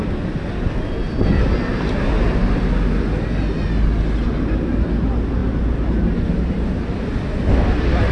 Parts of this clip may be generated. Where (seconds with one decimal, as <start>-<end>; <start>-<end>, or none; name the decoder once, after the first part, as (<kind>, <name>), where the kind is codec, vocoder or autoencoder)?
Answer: none